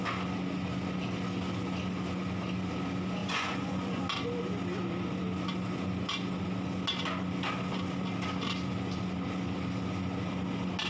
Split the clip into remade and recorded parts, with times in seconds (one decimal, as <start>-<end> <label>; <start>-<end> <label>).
0.0-3.2 recorded; 3.2-4.0 remade; 4.0-10.9 recorded